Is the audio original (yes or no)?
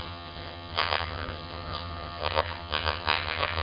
no